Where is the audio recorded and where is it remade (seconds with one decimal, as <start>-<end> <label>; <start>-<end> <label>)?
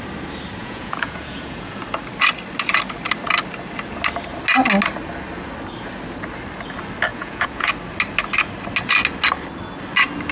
0.0-0.6 recorded; 0.6-1.8 remade; 1.8-7.1 recorded; 7.1-7.7 remade; 7.7-10.3 recorded